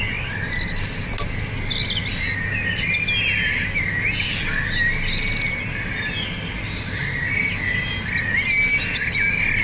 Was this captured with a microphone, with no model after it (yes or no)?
yes